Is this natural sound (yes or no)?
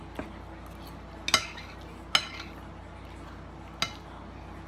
yes